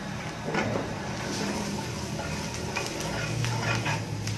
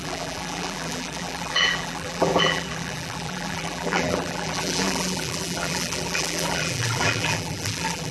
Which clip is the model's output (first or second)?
second